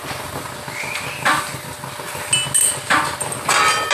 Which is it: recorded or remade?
recorded